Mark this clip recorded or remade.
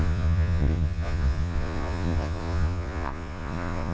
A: remade